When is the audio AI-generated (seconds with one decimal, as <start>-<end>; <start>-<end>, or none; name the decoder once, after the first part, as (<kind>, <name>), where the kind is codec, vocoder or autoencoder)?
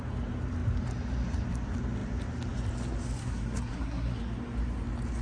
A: 3.2-4.2 (codec, SNAC)